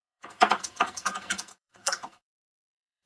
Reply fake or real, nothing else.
fake